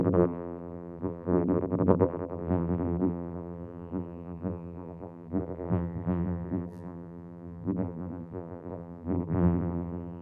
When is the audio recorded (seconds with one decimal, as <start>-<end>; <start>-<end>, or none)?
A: none